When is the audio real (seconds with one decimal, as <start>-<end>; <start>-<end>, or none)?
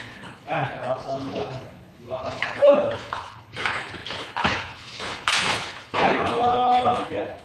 none